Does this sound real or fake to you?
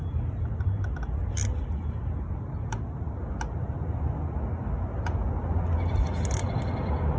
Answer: real